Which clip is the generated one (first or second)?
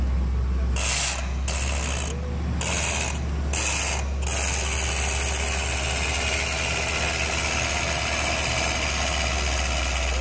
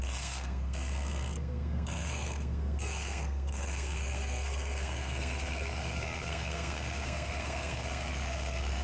second